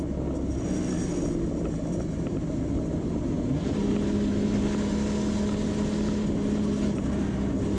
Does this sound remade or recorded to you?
recorded